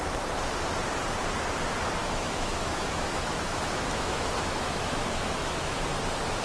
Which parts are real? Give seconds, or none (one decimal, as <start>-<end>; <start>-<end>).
0.0-2.0; 5.8-6.4